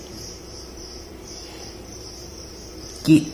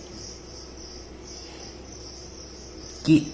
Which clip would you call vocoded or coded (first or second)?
first